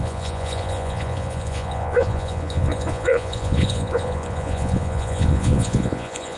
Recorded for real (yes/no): no